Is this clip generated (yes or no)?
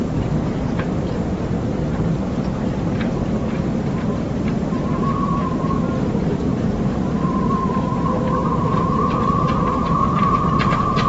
yes